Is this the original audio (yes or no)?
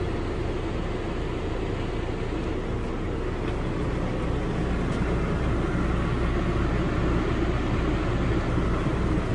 yes